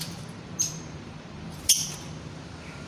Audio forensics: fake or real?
fake